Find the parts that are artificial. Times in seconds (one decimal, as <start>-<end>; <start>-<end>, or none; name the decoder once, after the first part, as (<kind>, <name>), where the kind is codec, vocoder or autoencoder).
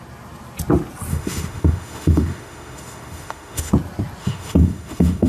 1.1-3.7 (autoencoder, DAC-VAE); 4.2-5.3